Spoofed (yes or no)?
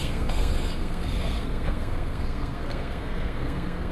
yes